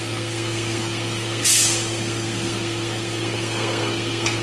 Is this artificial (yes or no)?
yes